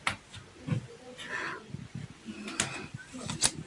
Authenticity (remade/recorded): recorded